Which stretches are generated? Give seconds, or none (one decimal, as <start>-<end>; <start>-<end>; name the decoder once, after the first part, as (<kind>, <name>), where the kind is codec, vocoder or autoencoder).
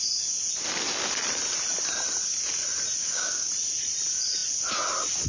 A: 3.0-3.5 (codec, DAC)